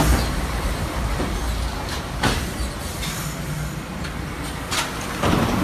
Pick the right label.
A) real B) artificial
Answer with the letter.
A